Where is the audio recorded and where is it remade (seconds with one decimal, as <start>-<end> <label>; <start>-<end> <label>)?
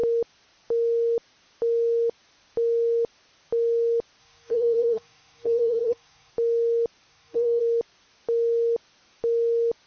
0.0-4.2 recorded; 4.2-6.3 remade; 6.3-7.1 recorded; 7.1-7.6 remade; 7.6-9.9 recorded